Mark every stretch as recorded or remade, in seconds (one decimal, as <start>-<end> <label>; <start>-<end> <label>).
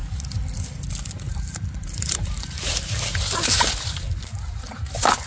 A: 0.0-1.3 recorded; 1.3-2.7 remade; 2.7-3.1 recorded; 3.1-5.3 remade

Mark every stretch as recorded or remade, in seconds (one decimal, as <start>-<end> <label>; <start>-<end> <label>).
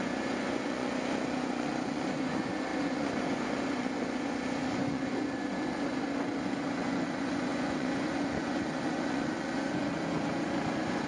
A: 0.0-11.1 remade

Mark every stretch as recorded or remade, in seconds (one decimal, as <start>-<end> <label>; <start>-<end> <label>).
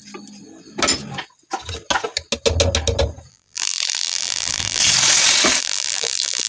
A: 0.0-3.3 recorded; 3.3-4.8 remade; 4.8-5.6 recorded; 5.6-6.5 remade